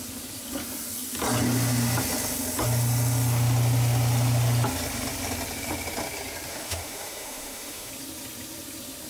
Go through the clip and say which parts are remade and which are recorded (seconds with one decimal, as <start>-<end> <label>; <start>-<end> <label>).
0.0-6.5 recorded; 6.5-7.9 remade; 7.9-9.1 recorded